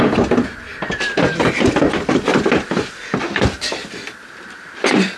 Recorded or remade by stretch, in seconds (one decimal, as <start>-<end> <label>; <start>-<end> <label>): 0.0-2.3 recorded; 2.3-5.2 remade